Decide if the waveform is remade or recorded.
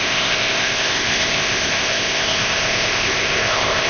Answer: remade